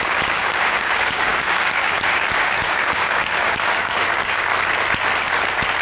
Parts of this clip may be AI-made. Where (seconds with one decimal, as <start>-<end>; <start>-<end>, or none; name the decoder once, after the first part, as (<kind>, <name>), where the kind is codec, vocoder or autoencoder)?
0.0-4.5 (codec, DAC)